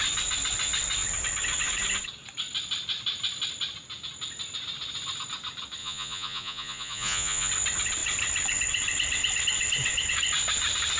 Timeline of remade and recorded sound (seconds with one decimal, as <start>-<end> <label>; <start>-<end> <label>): 0.0-5.8 recorded; 5.8-7.5 remade; 7.5-11.0 recorded